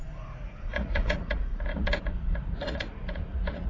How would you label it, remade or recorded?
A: remade